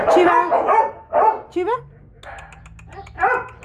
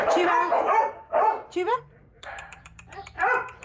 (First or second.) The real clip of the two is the first